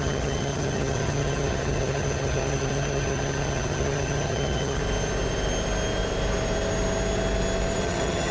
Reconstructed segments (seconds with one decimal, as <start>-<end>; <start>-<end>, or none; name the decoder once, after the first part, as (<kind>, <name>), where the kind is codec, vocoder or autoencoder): 0.0-4.8 (vocoder, HiFi-GAN); 7.8-8.3